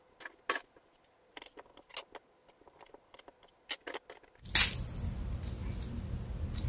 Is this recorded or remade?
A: recorded